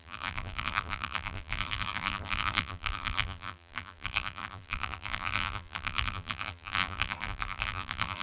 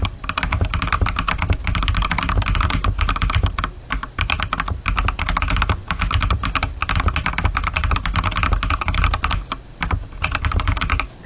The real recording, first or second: second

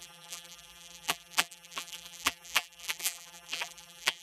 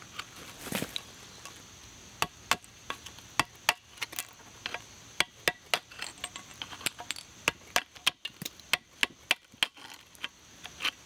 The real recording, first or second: second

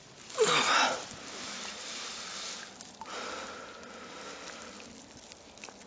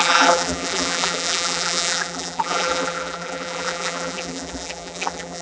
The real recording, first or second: first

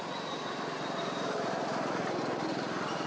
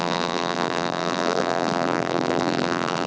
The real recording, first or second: first